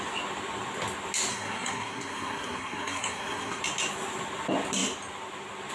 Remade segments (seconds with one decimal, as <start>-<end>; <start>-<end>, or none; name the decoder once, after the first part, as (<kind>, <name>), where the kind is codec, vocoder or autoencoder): 1.3-3.6 (codec, SNAC)